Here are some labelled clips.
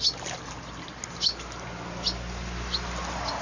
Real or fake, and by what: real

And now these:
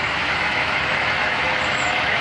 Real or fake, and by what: fake, autoencoder, DAC-VAE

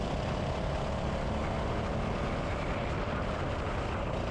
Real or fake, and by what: real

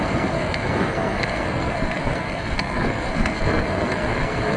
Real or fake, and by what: fake, codec, SNAC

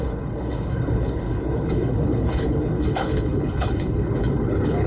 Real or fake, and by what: fake, codec, HILCodec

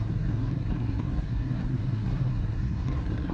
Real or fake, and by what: fake, codec, SNAC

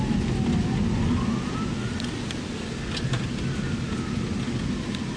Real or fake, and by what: real